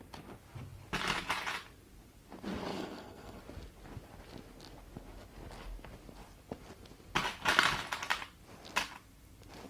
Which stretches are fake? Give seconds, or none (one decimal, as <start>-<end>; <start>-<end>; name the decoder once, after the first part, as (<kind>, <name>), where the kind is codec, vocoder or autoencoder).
2.7-3.4 (codec, SNAC)